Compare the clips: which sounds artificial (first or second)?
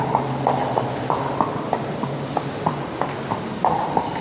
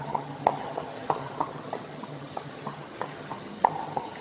second